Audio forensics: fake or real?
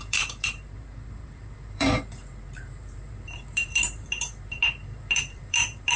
fake